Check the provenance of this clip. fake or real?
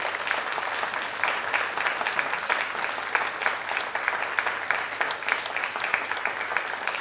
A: real